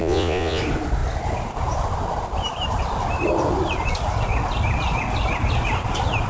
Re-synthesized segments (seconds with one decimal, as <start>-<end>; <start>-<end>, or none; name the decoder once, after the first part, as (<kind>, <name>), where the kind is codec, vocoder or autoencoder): 0.0-0.6 (vocoder, Vocos)